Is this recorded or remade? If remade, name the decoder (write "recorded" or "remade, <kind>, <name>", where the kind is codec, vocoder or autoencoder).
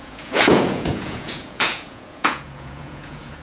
remade, vocoder, Vocos